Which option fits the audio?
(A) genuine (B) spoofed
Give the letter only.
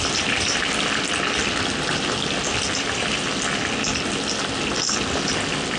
A